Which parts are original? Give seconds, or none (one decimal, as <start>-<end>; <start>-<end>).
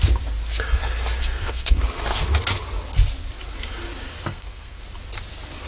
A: 0.0-1.2; 1.8-4.3; 4.8-5.7